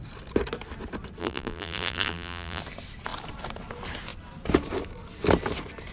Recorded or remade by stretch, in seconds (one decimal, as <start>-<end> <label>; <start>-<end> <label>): 0.0-1.2 recorded; 1.2-2.6 remade; 2.6-5.9 recorded